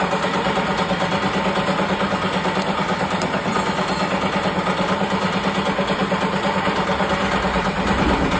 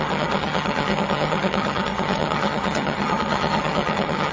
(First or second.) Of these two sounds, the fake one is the second